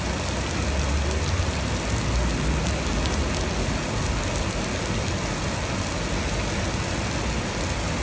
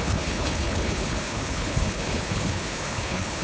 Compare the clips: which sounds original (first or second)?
first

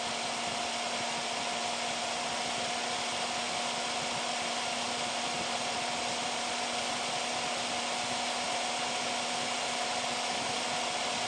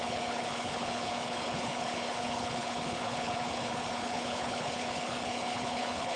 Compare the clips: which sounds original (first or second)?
first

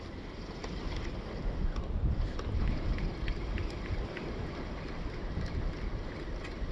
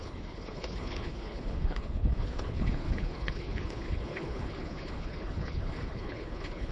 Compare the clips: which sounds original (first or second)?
first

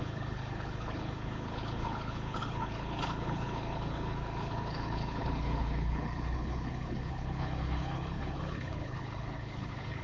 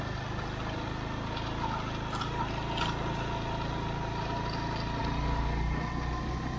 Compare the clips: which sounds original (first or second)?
second